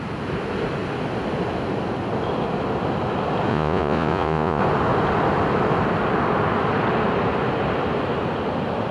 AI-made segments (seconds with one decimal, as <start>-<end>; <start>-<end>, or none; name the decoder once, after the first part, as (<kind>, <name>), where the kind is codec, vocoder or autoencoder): 3.5-4.6 (vocoder, Vocos)